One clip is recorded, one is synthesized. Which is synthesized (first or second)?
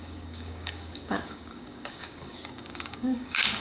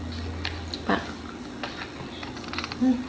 first